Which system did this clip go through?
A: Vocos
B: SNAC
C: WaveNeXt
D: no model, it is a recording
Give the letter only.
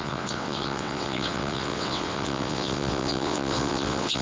C